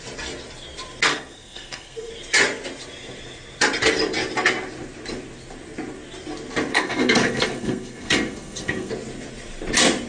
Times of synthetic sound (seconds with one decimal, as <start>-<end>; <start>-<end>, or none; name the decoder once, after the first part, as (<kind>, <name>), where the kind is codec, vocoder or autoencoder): 1.1-2.1 (codec, SNAC); 6.7-8.9

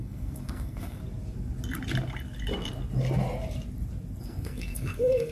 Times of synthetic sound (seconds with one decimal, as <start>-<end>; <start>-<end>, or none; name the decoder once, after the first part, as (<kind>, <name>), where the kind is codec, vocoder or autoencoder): 0.0-1.0 (codec, SNAC); 4.2-5.3

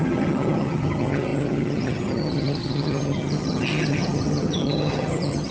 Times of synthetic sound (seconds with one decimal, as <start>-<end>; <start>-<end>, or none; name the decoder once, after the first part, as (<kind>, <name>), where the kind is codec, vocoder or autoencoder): 0.0-5.5 (vocoder, HiFi-GAN)